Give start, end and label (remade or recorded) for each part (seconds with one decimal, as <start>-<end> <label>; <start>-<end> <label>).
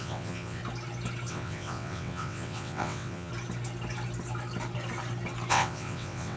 0.0-0.6 remade; 0.6-1.3 recorded; 1.3-3.3 remade; 3.3-5.5 recorded; 5.5-6.4 remade